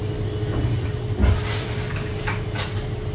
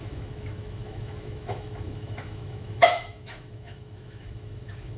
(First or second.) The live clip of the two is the first